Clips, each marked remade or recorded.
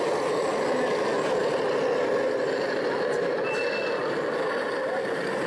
recorded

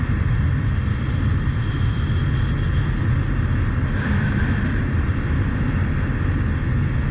recorded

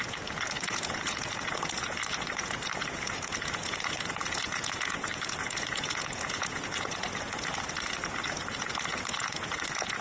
remade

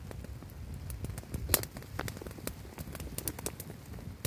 recorded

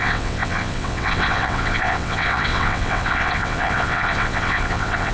remade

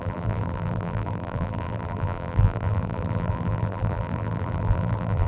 remade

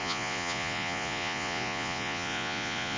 remade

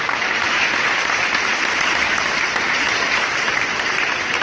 recorded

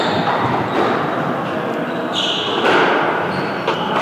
recorded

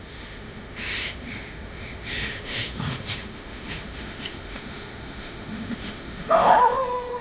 remade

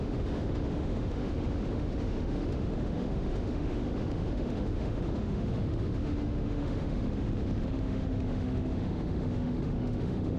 remade